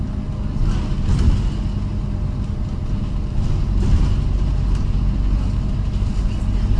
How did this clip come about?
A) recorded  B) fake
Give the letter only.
A